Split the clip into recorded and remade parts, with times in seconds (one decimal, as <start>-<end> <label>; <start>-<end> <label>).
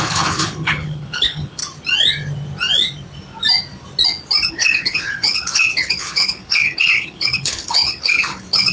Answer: 0.0-1.6 remade; 1.6-4.5 recorded; 4.5-8.7 remade